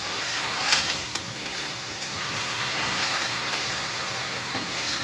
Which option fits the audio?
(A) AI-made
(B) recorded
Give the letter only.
A